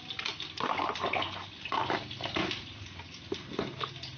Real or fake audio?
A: real